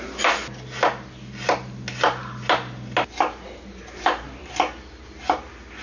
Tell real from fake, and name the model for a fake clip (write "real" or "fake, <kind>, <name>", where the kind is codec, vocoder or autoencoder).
real